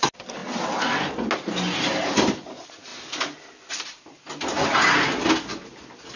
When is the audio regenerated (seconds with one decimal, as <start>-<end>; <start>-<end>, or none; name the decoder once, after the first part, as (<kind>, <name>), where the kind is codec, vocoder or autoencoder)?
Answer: none